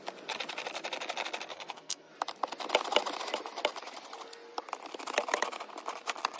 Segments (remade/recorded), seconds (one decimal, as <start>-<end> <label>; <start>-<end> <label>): 0.0-1.5 recorded; 1.5-2.1 remade; 2.1-6.4 recorded